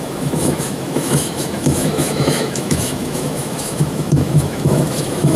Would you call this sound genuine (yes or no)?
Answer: no